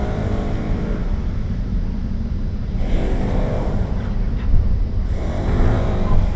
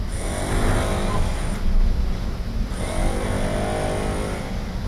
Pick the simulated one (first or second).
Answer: first